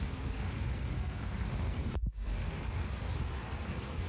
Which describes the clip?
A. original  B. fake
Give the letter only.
B